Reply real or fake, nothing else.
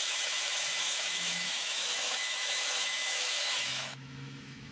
fake